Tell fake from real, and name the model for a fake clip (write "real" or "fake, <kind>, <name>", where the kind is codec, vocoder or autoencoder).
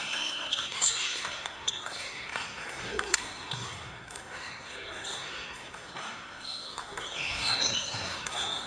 fake, codec, SNAC